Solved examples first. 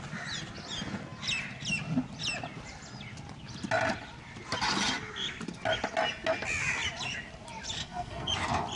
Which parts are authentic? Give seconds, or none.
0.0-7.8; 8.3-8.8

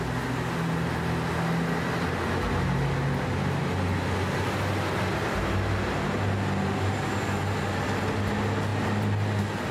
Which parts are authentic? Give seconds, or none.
0.0-9.7

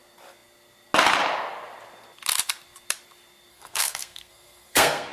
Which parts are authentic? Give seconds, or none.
0.0-3.5